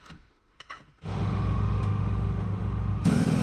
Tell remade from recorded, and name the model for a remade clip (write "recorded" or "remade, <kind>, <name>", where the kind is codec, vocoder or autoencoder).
remade, autoencoder, DAC-VAE